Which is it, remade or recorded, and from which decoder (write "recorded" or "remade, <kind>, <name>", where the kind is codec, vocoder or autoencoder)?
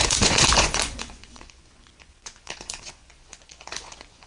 remade, vocoder, Vocos